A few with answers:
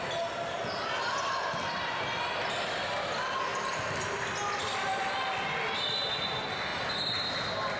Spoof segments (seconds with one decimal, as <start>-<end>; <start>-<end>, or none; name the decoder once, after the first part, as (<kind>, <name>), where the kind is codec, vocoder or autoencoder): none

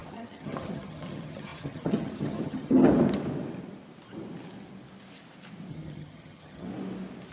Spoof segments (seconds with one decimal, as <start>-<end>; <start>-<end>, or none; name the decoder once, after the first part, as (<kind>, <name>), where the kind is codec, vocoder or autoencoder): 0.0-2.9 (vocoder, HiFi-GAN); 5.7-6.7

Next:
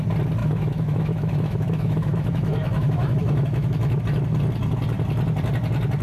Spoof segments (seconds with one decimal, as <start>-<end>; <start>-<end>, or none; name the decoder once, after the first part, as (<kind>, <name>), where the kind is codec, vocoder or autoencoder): 0.4-4.0 (autoencoder, DAC-VAE)